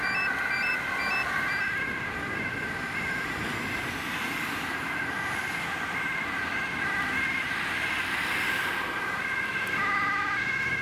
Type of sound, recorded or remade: recorded